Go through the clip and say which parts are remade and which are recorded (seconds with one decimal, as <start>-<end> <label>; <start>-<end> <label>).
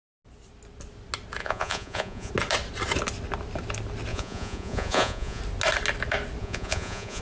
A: 0.0-1.4 recorded; 1.4-2.3 remade; 2.3-4.1 recorded; 4.1-5.4 remade; 5.4-6.4 recorded; 6.4-7.2 remade